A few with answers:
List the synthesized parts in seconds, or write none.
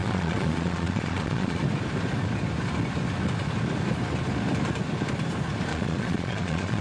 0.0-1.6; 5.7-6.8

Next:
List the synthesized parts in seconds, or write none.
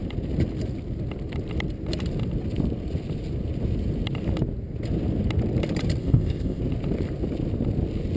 6.0-6.6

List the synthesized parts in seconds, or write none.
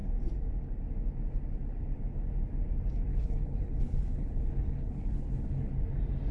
3.1-5.7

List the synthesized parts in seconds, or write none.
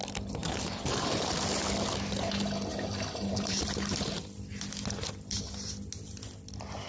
0.4-1.3; 2.7-4.0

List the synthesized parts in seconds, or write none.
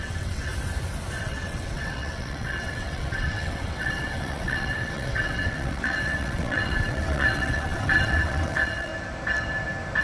0.0-0.5; 1.2-8.9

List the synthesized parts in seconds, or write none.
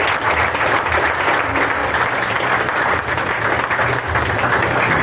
none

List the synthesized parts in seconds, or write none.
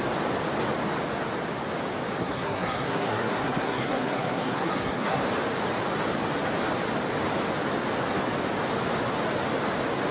2.2-5.2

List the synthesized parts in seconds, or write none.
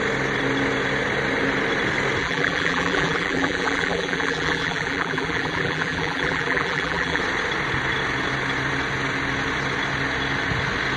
2.2-7.2